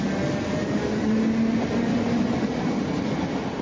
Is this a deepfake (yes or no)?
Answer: no